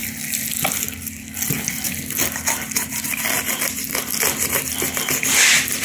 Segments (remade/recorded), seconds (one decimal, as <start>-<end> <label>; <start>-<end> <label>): 0.0-5.8 recorded